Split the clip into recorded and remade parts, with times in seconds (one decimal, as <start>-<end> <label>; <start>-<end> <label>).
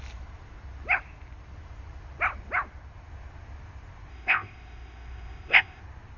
0.0-4.1 recorded; 4.1-5.8 remade; 5.8-6.2 recorded